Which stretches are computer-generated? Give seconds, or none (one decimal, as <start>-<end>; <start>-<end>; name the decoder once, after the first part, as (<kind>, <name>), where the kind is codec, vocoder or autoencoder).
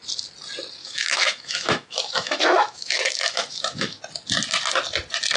0.8-4.0 (autoencoder, DAC-VAE)